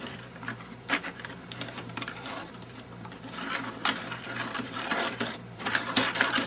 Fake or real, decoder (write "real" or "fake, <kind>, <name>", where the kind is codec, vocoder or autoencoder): fake, vocoder, BigVGAN v2